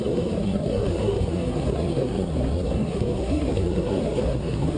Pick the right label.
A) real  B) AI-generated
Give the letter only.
B